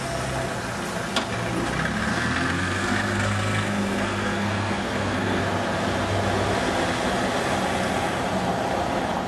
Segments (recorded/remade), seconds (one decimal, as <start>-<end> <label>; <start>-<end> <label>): 0.0-2.1 recorded; 2.1-5.4 remade; 5.4-9.3 recorded